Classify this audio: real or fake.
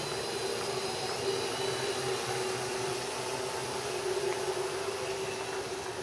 real